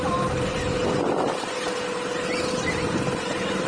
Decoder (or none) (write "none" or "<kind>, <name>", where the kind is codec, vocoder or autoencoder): none